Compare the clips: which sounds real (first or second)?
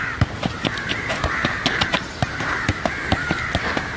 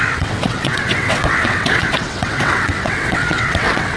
first